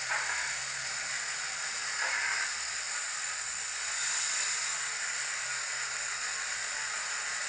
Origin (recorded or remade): recorded